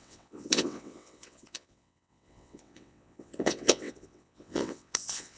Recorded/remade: remade